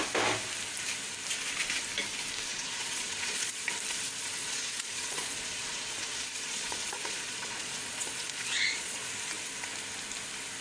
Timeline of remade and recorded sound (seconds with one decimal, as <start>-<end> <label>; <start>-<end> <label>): 0.0-2.5 recorded; 2.5-3.6 remade; 3.6-4.4 recorded; 4.4-9.1 remade; 9.1-10.6 recorded